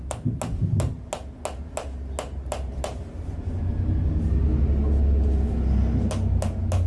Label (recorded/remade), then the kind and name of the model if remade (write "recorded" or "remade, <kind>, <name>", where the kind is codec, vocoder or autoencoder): recorded